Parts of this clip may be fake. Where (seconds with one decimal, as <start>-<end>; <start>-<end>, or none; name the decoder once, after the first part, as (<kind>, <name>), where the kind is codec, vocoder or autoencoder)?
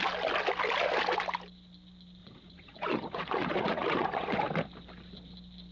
2.2-4.5 (vocoder, Vocos)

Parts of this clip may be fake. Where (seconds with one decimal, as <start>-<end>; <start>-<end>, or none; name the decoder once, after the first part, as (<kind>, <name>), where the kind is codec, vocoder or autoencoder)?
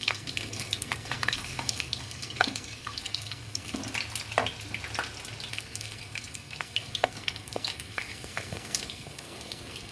0.0-3.8 (codec, SNAC); 5.5-9.9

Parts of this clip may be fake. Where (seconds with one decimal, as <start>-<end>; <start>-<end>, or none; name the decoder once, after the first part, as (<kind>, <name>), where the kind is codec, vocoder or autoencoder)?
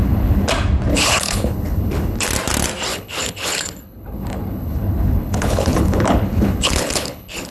0.0-0.5 (codec, HILCodec); 0.9-2.3; 2.9-7.5